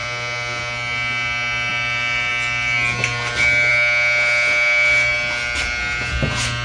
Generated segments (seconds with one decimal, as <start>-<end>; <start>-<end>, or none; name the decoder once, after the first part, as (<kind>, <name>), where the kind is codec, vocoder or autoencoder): none